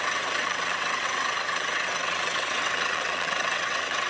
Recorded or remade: remade